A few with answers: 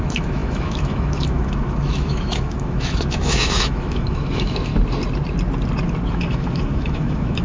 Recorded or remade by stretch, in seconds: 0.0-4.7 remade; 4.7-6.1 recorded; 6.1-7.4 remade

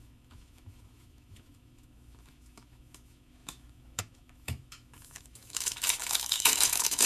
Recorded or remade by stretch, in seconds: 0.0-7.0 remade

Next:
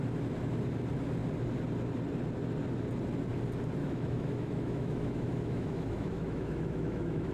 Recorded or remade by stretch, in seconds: 0.0-3.8 recorded; 3.8-7.3 remade